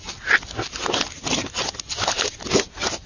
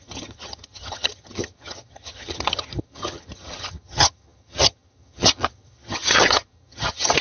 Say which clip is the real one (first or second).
first